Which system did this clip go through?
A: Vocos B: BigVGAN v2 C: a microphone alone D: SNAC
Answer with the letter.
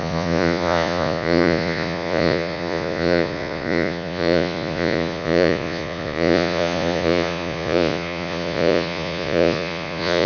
A